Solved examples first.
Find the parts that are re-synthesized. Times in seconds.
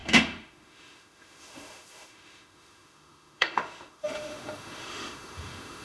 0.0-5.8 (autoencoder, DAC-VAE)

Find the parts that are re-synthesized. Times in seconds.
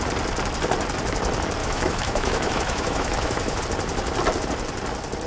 1.6-3.6 (autoencoder, DAC-VAE)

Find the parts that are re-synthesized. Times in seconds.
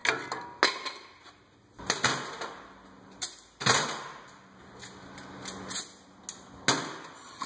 none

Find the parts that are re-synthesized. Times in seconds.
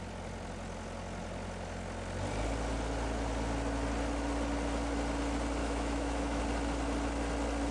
5.6-6.4 (autoencoder, DAC-VAE)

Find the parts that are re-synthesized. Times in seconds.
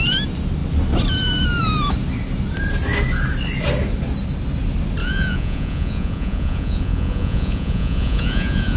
5.0-8.8 (vocoder, Vocos)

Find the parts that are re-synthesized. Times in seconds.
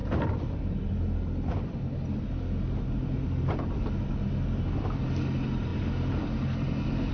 none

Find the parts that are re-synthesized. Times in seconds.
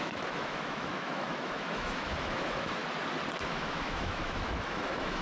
0.0-2.8 (autoencoder, DAC-VAE); 3.4-5.2